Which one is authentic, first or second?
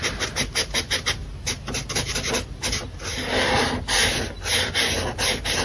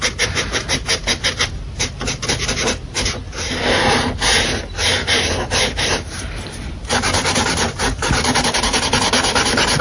first